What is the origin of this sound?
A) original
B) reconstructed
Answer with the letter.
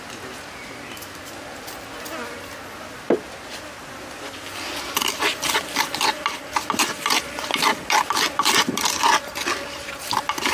A